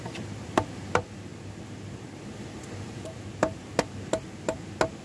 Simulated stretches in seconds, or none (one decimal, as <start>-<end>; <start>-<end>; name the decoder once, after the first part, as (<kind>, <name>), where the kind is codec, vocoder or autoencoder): none